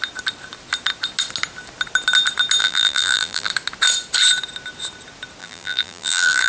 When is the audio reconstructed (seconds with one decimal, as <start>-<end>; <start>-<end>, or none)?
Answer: 2.6-3.5; 5.4-6.5